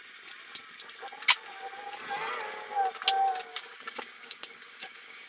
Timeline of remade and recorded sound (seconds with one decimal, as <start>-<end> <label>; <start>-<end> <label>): 0.0-3.5 recorded; 3.5-5.3 remade